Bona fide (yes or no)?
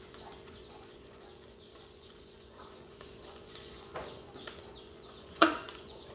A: no